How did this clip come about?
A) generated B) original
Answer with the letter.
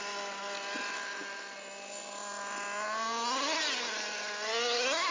B